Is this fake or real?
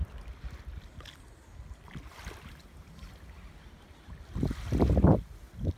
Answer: real